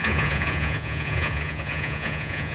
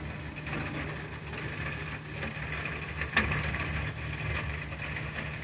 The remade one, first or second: first